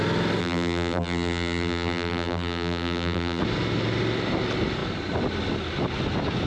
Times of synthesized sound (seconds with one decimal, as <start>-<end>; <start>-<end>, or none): 0.4-3.4